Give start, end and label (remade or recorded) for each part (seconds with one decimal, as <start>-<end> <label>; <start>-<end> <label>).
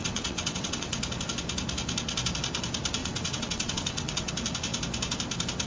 0.0-1.0 remade; 1.0-3.0 recorded; 3.0-4.3 remade; 4.3-5.7 recorded